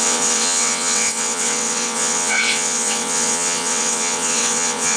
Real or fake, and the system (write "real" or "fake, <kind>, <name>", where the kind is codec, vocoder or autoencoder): fake, vocoder, WaveNeXt